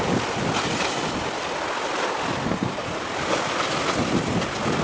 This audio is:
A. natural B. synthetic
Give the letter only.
A